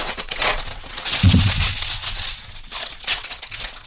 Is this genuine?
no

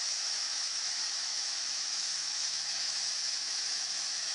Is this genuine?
no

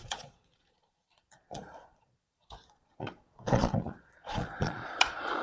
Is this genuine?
no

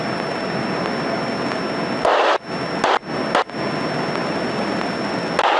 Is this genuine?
yes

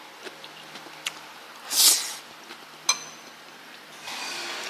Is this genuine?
yes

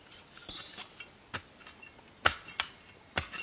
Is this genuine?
yes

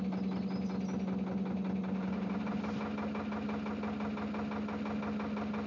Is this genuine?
yes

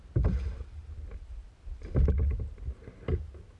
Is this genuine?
yes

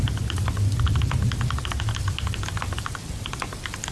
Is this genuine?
yes